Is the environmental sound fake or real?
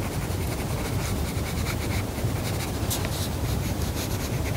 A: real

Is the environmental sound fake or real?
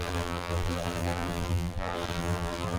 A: fake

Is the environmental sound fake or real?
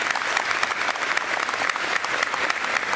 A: real